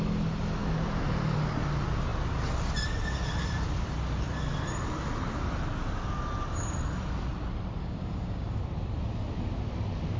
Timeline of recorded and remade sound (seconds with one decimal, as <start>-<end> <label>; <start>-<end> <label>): 0.0-7.8 recorded; 7.8-8.6 remade; 8.6-10.2 recorded